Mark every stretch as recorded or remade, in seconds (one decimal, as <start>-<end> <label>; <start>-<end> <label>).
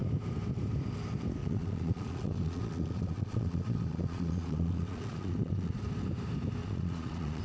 0.0-1.4 recorded; 1.4-5.8 remade; 5.8-6.6 recorded; 6.6-7.4 remade